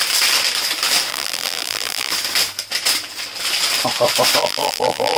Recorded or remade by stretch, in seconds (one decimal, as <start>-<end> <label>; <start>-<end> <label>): 0.0-1.1 recorded; 1.1-2.1 remade; 2.1-4.4 recorded; 4.4-5.2 remade